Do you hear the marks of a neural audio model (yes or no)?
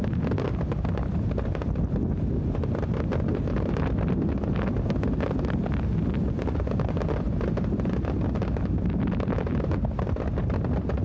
no